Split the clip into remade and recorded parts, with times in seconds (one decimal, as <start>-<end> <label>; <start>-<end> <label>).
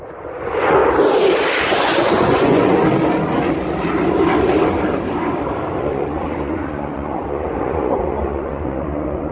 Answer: 0.0-0.8 remade; 0.8-1.7 recorded; 1.7-2.8 remade; 2.8-5.8 recorded; 5.8-9.3 remade